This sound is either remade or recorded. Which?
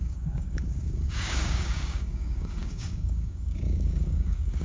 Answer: remade